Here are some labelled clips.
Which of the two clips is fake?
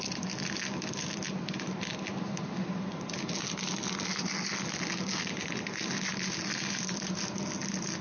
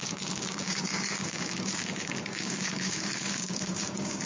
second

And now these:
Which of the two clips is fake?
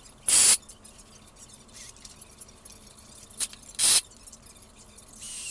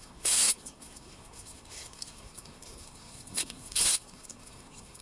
second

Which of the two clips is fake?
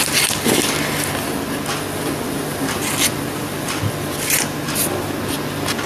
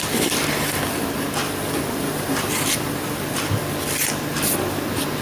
second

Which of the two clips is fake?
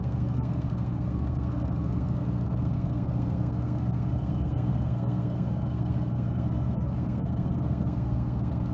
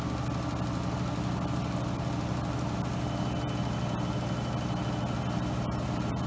first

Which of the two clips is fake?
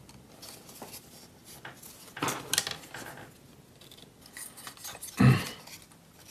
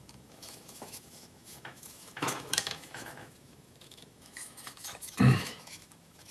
second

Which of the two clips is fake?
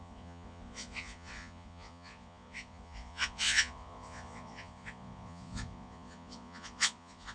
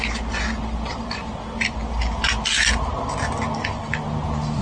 first